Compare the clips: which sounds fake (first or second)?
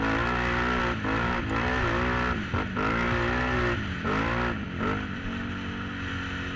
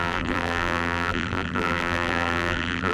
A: second